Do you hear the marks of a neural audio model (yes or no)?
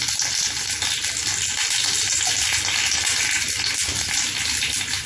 no